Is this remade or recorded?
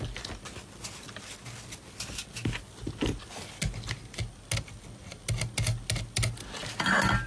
recorded